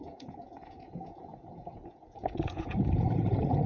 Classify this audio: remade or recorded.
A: remade